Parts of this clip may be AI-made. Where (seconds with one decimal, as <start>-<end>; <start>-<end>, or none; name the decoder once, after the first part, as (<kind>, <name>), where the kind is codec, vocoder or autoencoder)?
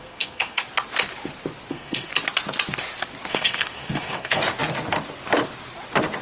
0.0-0.6 (codec, SNAC); 1.7-2.1; 3.3-4.4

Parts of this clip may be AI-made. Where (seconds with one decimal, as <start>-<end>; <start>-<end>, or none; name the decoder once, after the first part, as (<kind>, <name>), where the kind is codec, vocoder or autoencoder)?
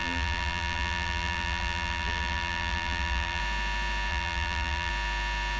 0.0-3.4 (vocoder, BigVGAN v2); 4.1-4.9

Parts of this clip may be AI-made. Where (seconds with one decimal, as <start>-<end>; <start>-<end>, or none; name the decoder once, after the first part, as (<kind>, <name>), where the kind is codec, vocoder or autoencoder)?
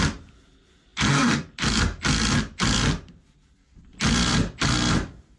none